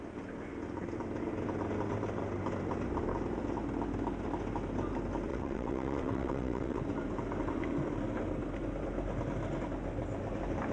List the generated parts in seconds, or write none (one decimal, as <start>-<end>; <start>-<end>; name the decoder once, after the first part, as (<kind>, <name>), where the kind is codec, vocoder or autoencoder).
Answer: 5.3-6.8 (vocoder, WaveNeXt)